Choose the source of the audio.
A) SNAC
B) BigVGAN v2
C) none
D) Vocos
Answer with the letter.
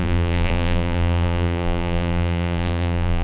B